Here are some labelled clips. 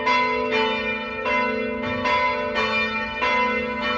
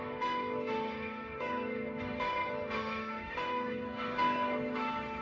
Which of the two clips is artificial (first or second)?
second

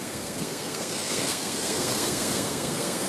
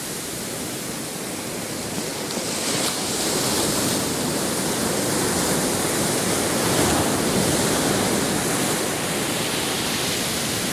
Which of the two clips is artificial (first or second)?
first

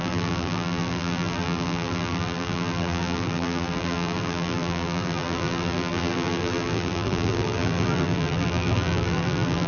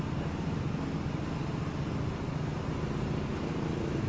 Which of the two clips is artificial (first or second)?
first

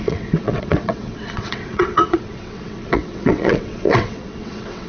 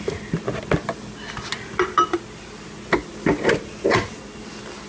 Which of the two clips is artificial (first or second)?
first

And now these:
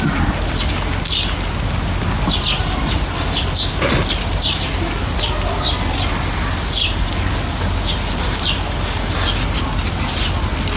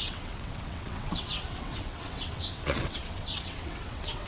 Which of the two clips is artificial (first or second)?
second